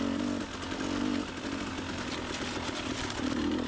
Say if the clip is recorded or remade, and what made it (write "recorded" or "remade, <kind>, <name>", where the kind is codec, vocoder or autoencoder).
recorded